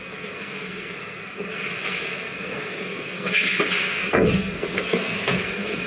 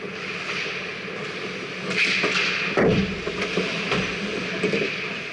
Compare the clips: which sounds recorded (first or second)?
second